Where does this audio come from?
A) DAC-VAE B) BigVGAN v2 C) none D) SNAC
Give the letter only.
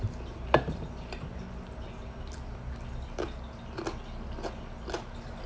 C